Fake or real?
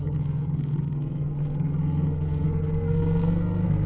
fake